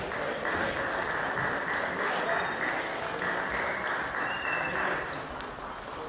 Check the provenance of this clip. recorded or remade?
recorded